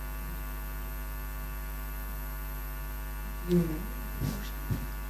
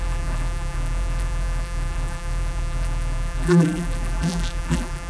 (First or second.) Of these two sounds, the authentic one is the first